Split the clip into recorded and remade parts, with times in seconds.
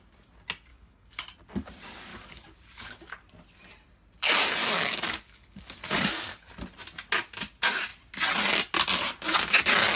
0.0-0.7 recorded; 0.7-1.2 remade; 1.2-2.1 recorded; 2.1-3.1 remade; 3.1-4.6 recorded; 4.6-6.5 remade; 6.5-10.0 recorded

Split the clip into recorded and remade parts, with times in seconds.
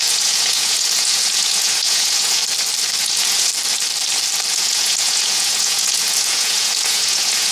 0.0-2.4 remade; 2.4-3.0 recorded; 3.0-3.5 remade; 3.5-4.5 recorded; 4.5-7.5 remade